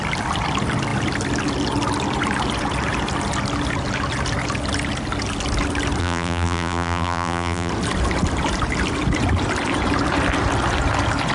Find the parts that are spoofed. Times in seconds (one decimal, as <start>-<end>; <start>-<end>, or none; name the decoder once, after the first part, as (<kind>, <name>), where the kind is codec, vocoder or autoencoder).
6.0-7.7 (vocoder, BigVGAN v2)